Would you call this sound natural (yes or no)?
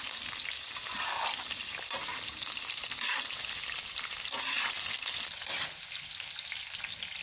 yes